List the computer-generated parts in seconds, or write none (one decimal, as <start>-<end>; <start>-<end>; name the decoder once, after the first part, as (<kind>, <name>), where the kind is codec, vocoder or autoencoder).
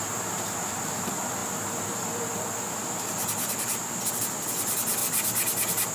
none